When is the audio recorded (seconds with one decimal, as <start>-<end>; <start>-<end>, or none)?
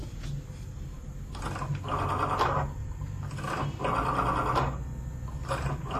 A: 0.0-2.8; 3.3-6.0